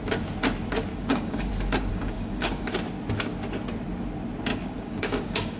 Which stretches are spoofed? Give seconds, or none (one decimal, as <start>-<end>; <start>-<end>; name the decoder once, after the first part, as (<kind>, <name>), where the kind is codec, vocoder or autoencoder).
0.9-1.5 (codec, DAC); 1.9-2.6; 4.5-5.6